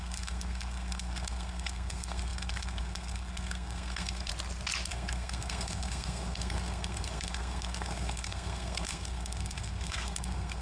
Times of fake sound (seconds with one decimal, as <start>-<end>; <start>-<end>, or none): 0.0-4.3; 4.9-10.6